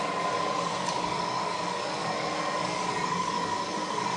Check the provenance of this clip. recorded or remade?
remade